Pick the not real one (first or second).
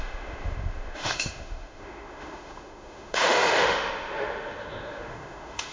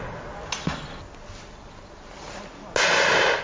first